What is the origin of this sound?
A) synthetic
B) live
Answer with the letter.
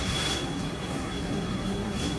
A